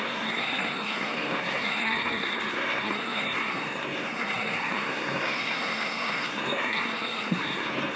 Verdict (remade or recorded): remade